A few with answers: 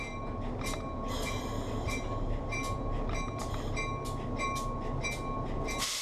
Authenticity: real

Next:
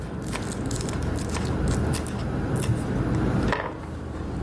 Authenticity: real